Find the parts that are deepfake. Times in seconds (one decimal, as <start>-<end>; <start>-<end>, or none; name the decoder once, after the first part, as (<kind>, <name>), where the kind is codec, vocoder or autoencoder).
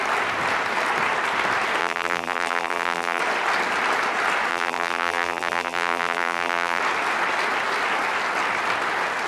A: 1.8-3.2 (vocoder, BigVGAN v2); 4.5-6.8